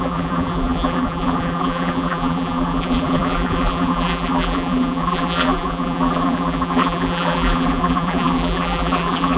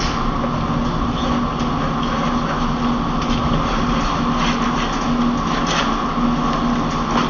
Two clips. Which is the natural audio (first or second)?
second